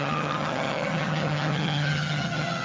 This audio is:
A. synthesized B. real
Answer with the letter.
A